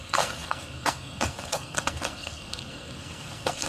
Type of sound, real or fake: fake